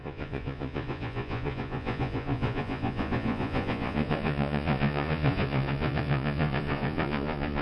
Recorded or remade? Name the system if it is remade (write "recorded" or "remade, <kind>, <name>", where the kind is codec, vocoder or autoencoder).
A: remade, vocoder, Vocos